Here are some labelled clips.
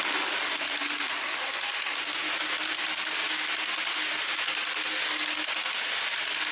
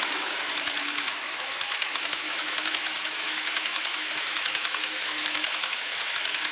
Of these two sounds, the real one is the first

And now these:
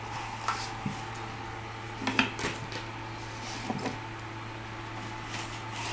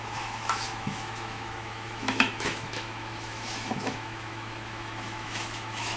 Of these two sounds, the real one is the first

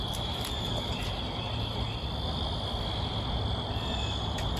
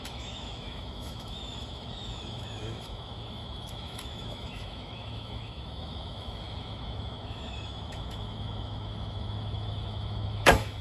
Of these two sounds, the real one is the first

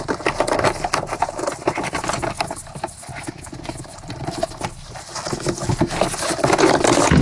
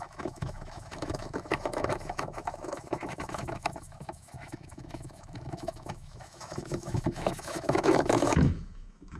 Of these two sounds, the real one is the first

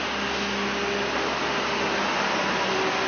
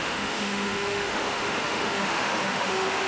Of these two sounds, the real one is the first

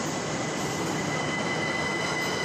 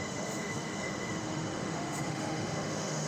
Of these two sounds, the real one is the first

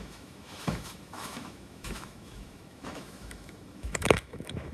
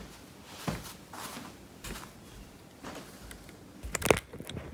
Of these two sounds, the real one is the second